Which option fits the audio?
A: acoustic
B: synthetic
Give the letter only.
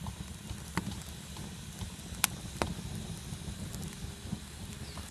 A